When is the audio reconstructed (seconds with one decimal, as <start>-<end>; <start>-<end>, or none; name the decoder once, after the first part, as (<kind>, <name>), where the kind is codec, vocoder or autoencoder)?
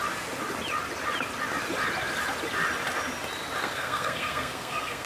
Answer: 3.6-5.1 (codec, SNAC)